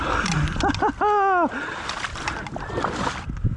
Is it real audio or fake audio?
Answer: real